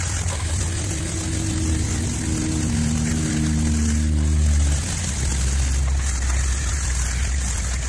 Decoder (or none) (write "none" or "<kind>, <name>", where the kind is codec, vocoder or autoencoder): none